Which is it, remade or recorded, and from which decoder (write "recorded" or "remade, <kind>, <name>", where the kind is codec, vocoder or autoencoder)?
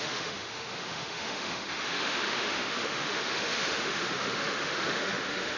remade, autoencoder, DAC-VAE